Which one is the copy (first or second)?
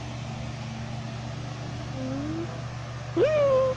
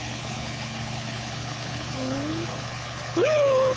second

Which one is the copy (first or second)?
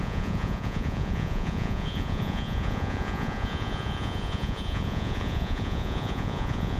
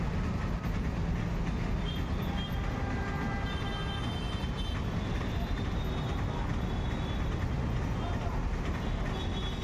first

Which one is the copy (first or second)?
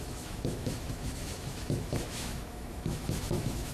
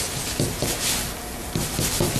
first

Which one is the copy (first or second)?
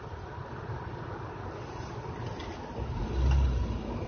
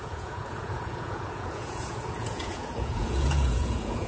second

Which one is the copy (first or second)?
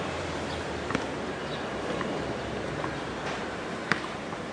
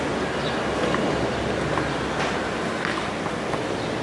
first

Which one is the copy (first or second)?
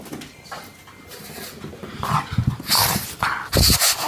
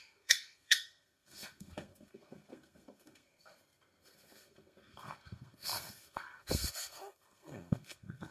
second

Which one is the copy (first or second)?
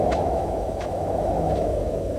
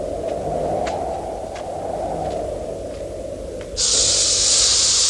first